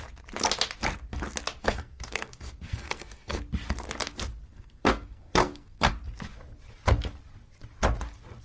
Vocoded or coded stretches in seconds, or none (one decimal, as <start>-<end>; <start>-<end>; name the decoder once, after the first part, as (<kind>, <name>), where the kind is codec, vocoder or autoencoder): 1.6-3.4 (codec, SNAC); 4.5-5.9